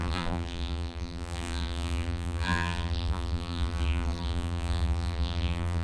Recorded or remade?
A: remade